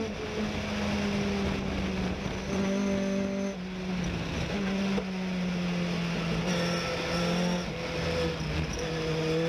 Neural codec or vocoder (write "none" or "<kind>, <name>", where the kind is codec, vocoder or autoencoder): none